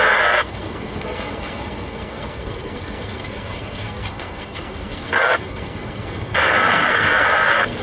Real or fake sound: fake